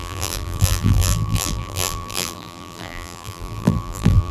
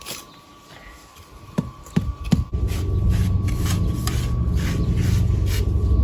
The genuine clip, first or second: second